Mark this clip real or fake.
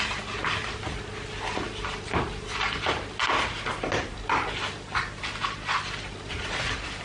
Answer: fake